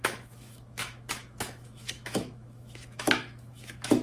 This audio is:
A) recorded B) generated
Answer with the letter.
B